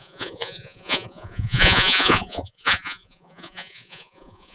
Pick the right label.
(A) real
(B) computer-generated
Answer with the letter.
B